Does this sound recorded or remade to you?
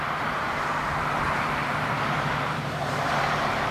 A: remade